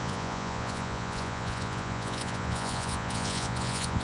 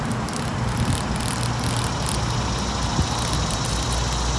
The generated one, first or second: first